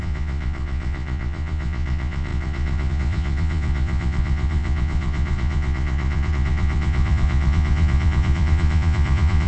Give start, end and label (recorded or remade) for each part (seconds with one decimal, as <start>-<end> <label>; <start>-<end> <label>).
0.0-9.5 remade